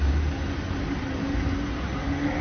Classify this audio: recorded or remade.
recorded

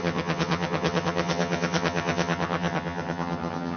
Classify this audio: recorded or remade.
remade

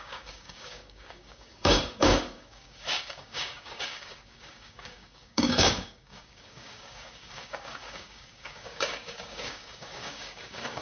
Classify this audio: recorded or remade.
remade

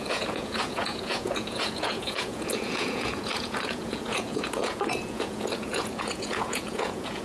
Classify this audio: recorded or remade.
remade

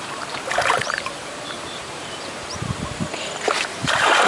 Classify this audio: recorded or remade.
remade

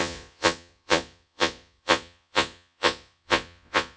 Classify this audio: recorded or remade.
remade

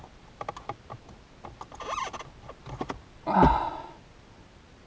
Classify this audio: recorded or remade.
recorded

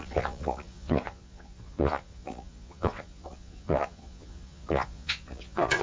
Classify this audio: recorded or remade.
remade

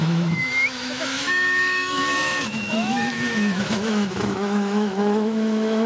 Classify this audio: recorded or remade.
remade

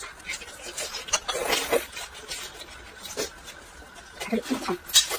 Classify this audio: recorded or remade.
recorded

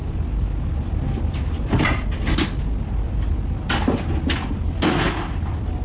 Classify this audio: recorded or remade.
recorded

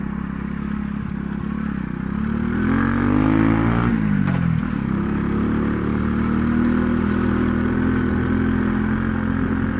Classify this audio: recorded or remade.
recorded